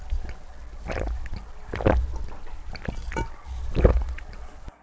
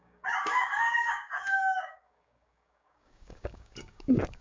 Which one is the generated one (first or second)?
second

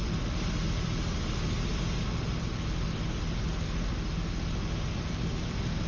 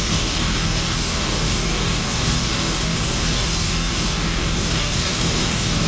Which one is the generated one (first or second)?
second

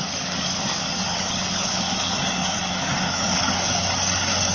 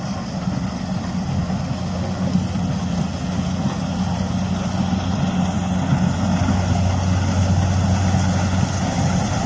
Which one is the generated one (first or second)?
first